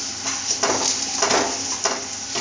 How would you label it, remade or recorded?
recorded